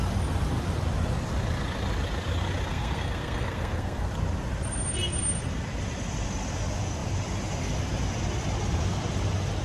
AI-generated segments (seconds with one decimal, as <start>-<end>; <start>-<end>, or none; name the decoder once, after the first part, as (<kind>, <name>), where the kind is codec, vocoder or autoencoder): 2.7-4.1 (codec, SNAC)